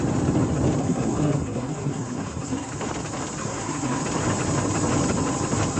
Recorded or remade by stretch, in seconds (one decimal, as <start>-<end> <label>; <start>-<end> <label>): 0.0-0.8 recorded; 0.8-2.7 remade; 2.7-3.4 recorded; 3.4-4.0 remade; 4.0-5.8 recorded